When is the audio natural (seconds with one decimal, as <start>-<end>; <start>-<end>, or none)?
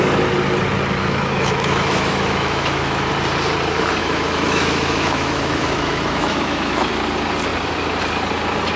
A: 0.0-1.0; 3.1-4.0; 6.9-8.8